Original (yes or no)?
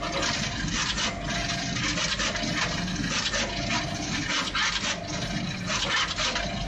yes